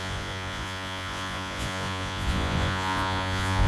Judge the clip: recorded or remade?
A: remade